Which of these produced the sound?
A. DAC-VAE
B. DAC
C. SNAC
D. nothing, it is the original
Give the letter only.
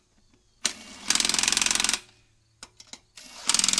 D